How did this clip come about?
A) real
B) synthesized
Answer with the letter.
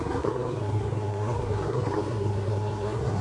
B